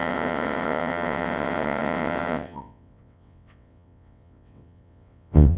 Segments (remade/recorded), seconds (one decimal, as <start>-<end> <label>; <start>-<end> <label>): 0.0-5.6 remade